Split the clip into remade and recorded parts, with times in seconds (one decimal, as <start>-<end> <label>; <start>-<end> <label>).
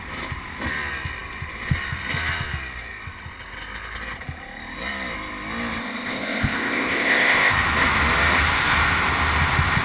0.0-5.8 recorded; 5.8-7.5 remade; 7.5-9.8 recorded